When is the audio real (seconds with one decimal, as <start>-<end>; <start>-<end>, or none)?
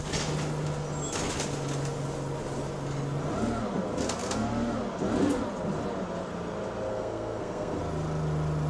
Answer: 0.0-6.9; 7.8-8.7